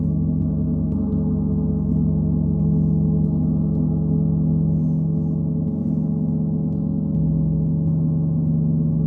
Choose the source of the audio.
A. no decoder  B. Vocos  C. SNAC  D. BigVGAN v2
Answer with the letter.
A